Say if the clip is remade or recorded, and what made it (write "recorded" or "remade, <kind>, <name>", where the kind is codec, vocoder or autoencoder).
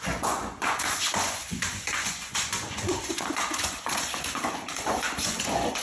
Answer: remade, vocoder, Vocos